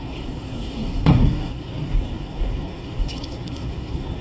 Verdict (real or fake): fake